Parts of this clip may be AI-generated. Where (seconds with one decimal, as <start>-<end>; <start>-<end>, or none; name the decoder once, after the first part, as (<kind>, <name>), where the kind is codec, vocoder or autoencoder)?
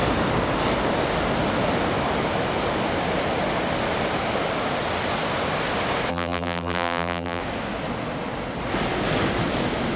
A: 6.1-7.4 (vocoder, BigVGAN v2)